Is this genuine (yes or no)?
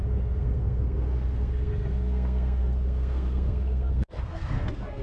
no